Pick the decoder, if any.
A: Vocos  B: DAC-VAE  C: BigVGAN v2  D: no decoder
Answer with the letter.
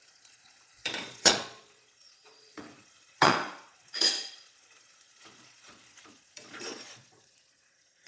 A